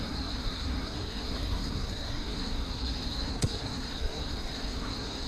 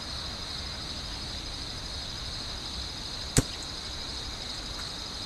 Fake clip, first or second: first